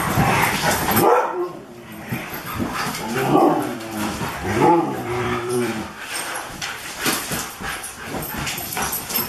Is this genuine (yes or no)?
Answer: no